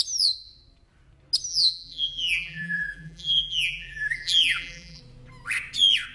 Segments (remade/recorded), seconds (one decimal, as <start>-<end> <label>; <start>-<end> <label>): 0.0-1.5 recorded; 1.5-5.0 remade; 5.0-6.1 recorded